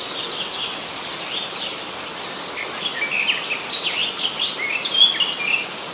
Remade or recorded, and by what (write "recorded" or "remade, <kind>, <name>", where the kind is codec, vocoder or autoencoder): recorded